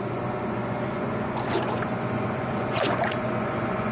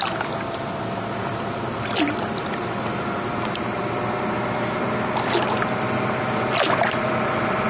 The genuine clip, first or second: second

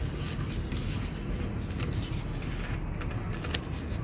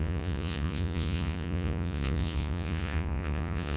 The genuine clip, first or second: first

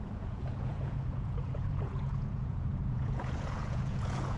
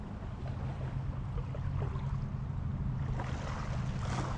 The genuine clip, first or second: second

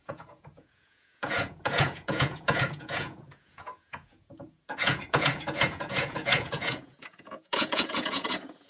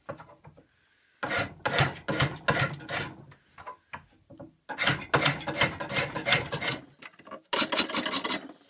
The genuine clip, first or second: second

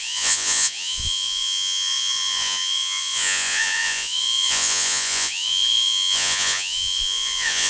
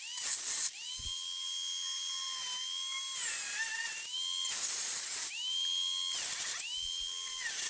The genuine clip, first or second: second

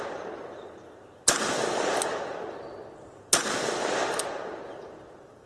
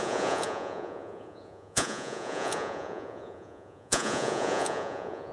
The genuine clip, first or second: first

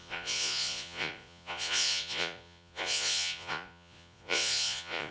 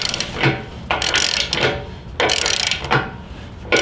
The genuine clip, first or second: second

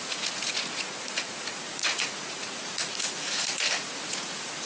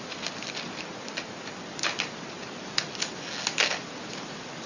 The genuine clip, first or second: second